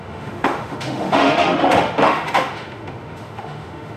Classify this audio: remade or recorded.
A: remade